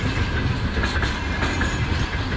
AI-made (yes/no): no